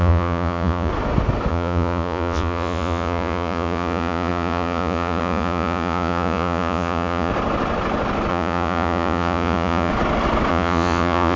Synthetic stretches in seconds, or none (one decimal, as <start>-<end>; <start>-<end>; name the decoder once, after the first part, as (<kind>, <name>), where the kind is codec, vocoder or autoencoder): 0.0-0.9 (vocoder, Vocos); 1.5-7.3; 8.3-9.9; 10.5-11.4

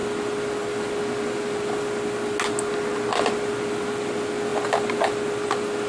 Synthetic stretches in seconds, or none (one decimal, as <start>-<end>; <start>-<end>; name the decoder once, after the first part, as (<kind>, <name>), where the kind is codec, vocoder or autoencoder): none